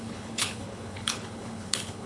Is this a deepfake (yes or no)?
yes